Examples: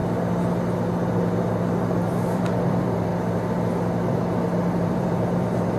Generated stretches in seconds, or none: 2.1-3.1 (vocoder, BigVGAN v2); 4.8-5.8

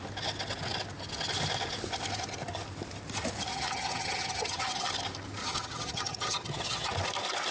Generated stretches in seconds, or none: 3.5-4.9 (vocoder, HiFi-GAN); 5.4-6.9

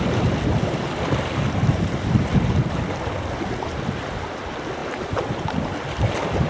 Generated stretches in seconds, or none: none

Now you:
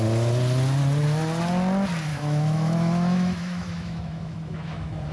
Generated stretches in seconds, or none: 2.1-5.1 (autoencoder, DAC-VAE)